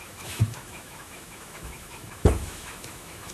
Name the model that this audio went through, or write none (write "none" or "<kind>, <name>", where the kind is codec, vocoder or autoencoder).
autoencoder, DAC-VAE